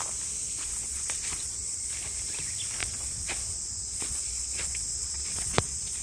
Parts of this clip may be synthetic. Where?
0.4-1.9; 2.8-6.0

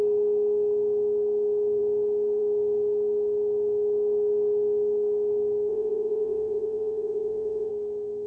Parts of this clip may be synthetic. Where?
5.7-7.7

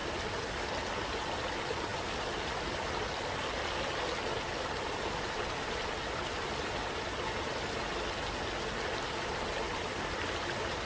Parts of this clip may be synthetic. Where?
none

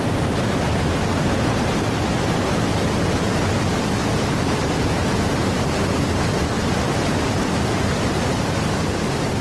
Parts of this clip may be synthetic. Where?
4.0-4.9